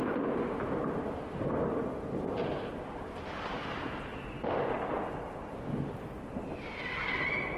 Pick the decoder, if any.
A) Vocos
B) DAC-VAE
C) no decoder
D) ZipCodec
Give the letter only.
C